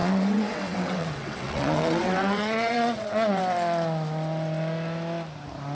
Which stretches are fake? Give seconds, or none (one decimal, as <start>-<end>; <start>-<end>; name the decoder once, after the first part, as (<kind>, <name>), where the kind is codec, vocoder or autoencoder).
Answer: 0.0-3.4 (vocoder, WaveNeXt)

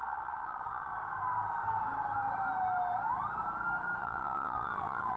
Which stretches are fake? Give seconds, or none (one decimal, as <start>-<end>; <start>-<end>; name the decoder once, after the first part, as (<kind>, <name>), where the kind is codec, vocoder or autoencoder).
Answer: 0.0-0.9 (vocoder, WaveNeXt); 4.0-5.2

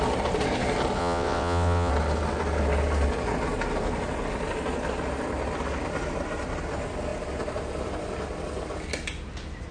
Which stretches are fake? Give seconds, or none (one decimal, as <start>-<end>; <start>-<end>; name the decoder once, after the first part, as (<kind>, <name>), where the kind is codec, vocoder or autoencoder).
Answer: 1.0-1.9 (vocoder, WaveNeXt)

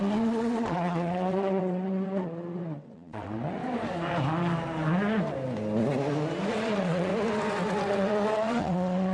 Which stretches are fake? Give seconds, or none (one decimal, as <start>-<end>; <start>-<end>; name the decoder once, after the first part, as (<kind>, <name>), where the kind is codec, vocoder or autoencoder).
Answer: 0.0-3.6 (vocoder, WaveNeXt); 6.5-7.1; 7.9-9.1